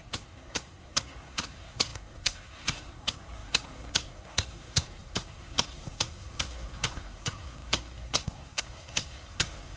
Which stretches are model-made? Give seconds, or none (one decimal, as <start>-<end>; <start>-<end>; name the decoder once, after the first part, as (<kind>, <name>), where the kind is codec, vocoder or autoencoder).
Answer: 0.0-9.8 (codec, SNAC)

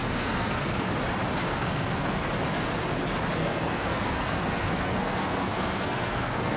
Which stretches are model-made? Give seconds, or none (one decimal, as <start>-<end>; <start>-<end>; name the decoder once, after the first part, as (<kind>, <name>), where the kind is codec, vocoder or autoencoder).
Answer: 0.0-0.9 (codec, SNAC); 1.5-2.3; 3.4-6.6